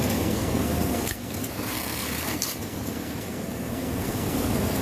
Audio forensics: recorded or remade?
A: remade